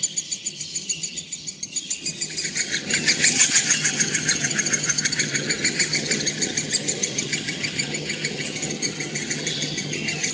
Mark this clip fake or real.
fake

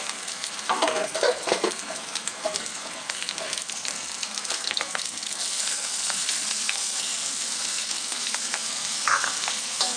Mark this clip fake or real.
fake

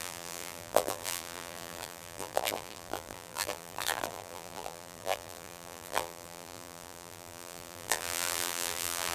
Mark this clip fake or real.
fake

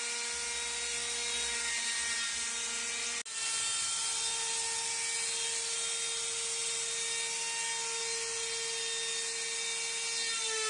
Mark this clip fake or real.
real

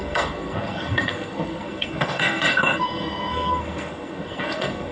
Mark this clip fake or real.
fake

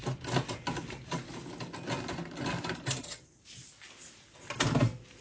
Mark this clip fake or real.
real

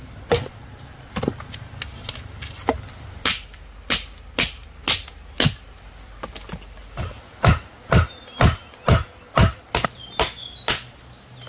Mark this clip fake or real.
real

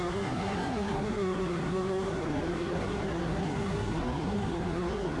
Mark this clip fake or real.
fake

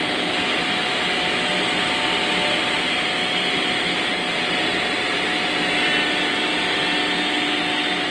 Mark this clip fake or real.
real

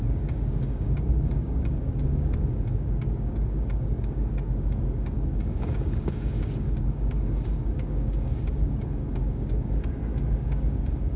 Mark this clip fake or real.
fake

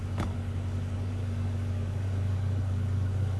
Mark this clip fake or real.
fake